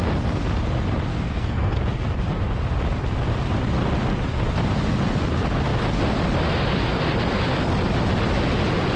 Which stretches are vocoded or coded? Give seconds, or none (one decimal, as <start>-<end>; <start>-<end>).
1.1-1.8

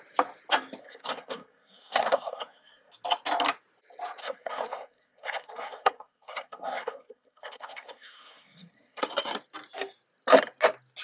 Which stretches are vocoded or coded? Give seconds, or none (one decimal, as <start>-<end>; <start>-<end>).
0.8-2.9; 4.2-9.0

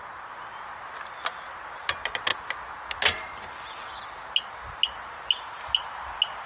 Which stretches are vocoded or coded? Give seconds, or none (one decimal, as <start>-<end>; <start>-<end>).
none

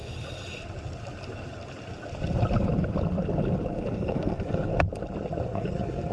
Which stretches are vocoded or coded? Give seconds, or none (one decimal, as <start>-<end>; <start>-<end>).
3.7-4.7; 5.4-6.1

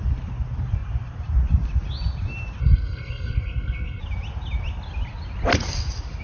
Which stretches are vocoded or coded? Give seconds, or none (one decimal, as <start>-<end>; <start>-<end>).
2.6-4.0

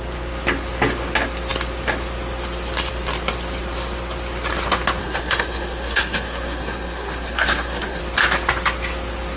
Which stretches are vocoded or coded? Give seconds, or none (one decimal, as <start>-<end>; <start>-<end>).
5.0-8.0

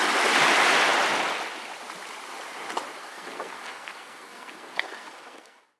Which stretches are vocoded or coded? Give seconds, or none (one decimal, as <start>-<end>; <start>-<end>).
3.0-5.8

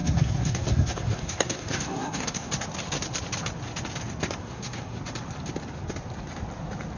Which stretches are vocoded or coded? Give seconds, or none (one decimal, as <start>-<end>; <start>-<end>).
0.0-2.5; 4.4-5.0